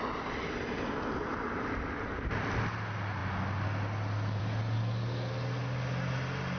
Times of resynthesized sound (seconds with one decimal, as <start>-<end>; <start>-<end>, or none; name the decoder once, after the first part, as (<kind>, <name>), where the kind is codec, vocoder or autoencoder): none